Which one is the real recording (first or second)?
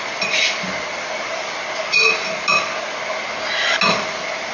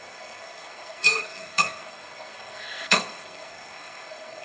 first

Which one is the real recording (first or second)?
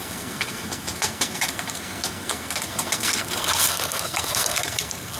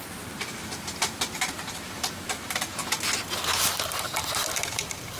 second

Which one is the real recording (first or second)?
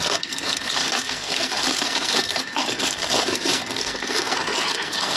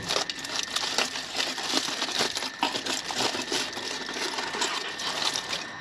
second